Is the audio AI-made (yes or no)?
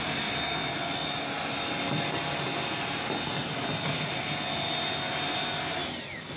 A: no